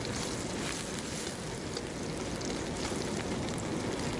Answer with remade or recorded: recorded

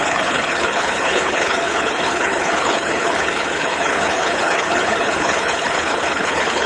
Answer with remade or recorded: remade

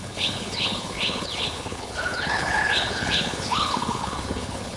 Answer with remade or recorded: remade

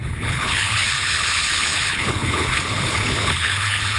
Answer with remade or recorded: remade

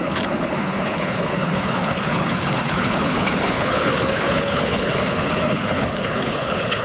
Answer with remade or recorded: remade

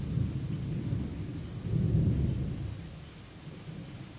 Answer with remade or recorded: recorded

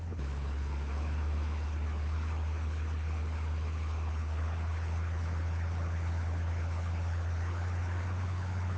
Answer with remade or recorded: remade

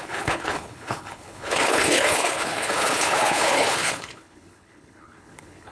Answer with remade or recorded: remade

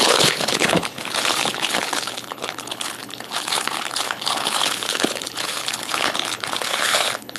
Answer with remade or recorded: remade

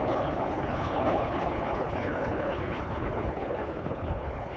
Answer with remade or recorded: remade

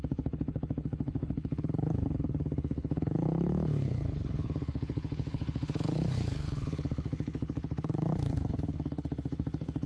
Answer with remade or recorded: remade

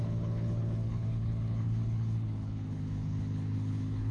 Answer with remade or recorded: remade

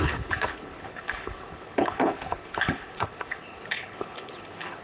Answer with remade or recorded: remade